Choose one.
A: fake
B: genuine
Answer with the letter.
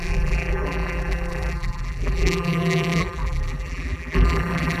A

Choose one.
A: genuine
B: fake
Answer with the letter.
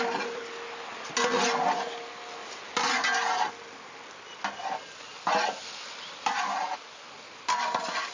A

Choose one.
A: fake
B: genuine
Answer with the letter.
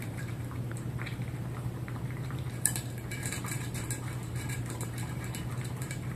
A